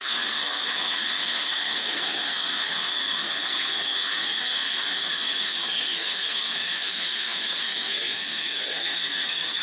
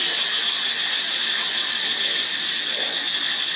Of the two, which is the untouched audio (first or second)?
second